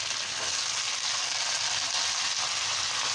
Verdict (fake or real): real